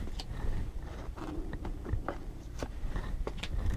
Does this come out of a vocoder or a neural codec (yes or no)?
yes